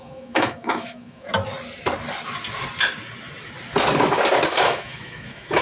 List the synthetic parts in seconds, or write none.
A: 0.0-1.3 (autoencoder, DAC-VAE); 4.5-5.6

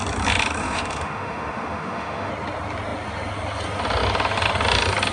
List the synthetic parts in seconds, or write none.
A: 0.6-2.3 (autoencoder, DAC-VAE)

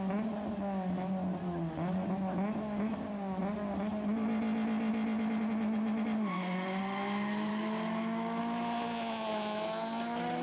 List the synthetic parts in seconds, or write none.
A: 6.3-6.8 (autoencoder, DAC-VAE); 7.5-8.4

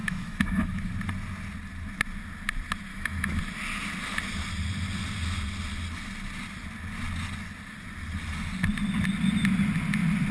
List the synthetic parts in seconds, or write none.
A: 0.0-0.9 (autoencoder, DAC-VAE); 2.9-3.4

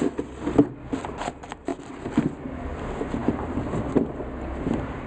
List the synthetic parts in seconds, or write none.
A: none

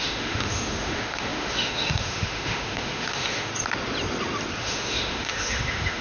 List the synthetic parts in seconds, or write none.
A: 0.0-3.5 (autoencoder, DAC-VAE); 4.6-6.0